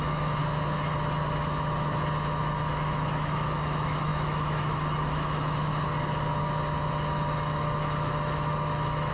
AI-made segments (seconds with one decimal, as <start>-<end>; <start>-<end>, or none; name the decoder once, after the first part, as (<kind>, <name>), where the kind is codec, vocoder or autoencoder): 0.0-0.4 (autoencoder, DAC-VAE); 2.4-5.7; 7.1-9.1